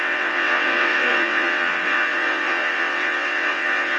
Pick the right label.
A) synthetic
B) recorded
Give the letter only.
A